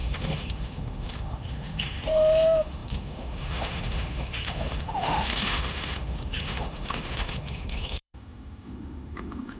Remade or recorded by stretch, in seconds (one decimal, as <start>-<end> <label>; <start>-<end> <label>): 0.0-9.6 remade